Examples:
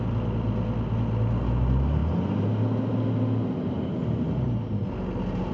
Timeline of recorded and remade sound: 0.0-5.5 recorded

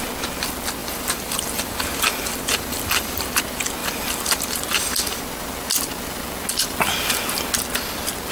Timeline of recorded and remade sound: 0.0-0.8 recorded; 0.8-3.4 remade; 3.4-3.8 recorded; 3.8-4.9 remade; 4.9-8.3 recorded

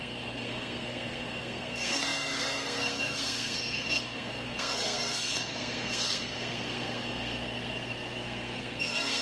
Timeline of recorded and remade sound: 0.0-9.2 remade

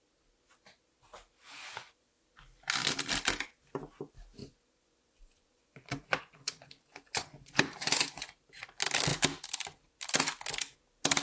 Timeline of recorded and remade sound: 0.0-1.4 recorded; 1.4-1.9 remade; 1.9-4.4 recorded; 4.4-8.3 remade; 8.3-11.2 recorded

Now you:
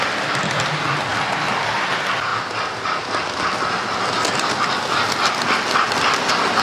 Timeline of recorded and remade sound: 0.0-1.1 recorded; 1.1-1.9 remade; 1.9-6.6 recorded